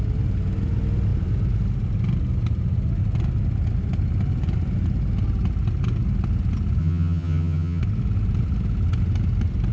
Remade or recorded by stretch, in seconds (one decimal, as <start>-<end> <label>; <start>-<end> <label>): 0.0-6.8 recorded; 6.8-7.8 remade; 7.8-9.7 recorded